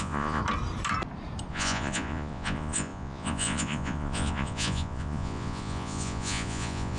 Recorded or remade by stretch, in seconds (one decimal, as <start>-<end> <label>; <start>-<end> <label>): 0.0-0.4 remade; 0.4-1.5 recorded; 1.5-7.0 remade